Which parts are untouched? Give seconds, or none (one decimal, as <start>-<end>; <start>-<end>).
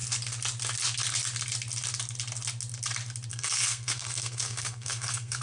0.0-3.3